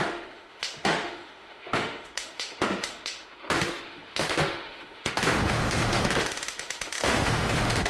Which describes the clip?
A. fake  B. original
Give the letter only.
A